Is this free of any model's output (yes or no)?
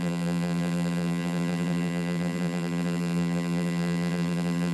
no